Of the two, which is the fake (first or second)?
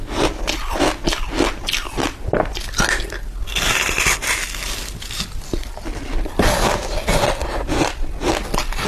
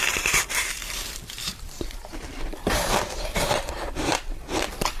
second